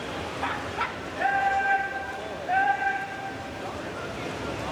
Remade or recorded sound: recorded